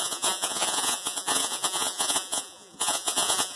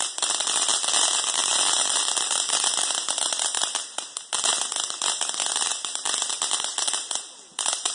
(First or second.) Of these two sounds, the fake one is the first